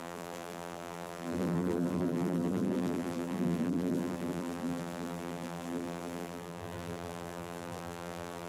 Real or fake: fake